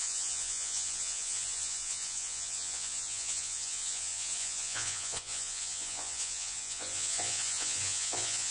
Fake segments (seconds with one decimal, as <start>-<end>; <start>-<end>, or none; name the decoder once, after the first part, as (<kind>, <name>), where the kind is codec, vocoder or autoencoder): 0.0-8.5 (vocoder, Vocos)